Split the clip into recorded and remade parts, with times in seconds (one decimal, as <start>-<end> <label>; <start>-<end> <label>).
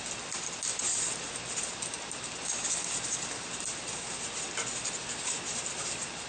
0.0-6.3 recorded